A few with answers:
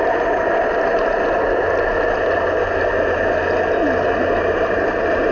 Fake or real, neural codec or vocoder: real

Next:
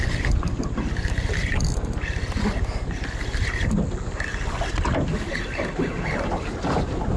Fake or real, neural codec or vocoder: real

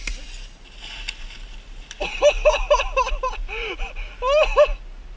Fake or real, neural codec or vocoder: real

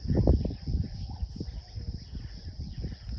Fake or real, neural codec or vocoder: real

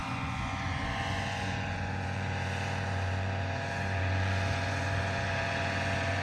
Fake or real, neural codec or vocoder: fake, vocoder, Vocos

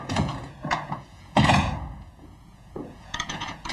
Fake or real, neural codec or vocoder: fake, vocoder, Vocos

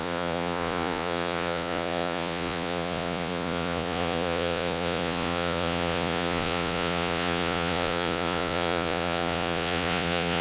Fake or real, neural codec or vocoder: fake, vocoder, Vocos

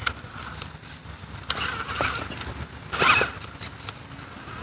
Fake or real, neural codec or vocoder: real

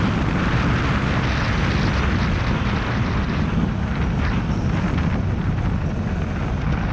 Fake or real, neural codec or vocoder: real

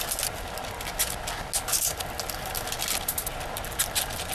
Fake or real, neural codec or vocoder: real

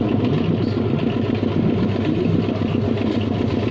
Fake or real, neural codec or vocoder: real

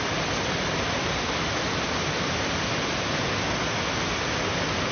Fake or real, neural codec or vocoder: real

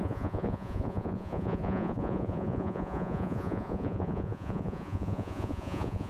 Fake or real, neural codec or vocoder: fake, vocoder, Vocos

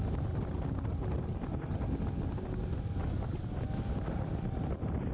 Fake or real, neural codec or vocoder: real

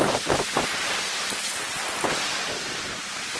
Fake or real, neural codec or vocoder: real